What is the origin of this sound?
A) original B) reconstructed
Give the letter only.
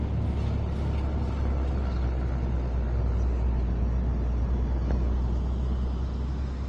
A